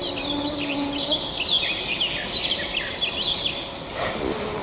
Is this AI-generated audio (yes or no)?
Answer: no